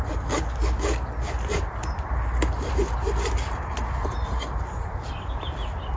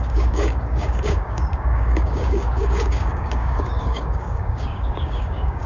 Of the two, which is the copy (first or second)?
second